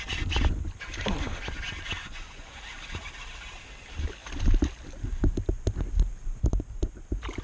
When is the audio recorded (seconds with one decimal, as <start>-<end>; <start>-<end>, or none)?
0.0-2.0; 2.6-7.4

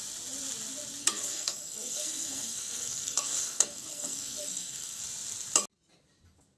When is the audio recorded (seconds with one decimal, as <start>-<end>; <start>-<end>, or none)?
0.0-1.0; 5.0-6.6

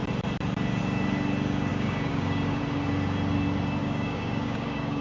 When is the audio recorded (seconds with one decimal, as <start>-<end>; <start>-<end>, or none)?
0.0-1.7; 2.6-3.8

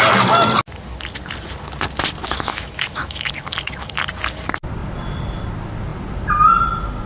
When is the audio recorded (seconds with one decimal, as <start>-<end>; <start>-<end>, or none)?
0.0-2.2; 3.3-7.1

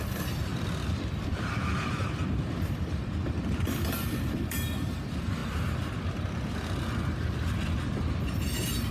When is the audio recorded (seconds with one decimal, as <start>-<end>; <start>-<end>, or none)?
0.5-1.1; 5.4-8.9